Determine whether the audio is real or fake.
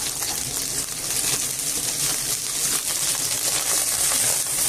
real